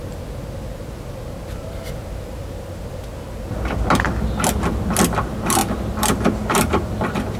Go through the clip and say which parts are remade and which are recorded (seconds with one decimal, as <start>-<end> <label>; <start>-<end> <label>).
0.0-7.4 recorded